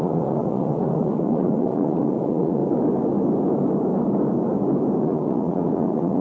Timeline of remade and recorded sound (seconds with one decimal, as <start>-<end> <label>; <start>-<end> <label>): 0.0-2.6 remade; 2.6-5.0 recorded; 5.0-6.2 remade